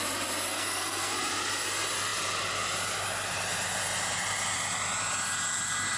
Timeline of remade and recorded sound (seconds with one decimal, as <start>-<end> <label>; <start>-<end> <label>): 0.0-0.5 recorded; 0.5-1.1 remade; 1.1-6.0 recorded